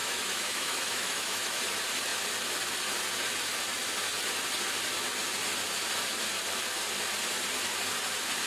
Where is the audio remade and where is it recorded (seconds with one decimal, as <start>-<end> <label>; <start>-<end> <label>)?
0.0-1.6 remade; 1.6-8.5 recorded